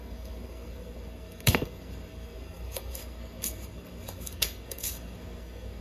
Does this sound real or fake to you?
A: fake